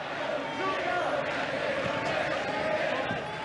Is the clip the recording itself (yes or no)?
yes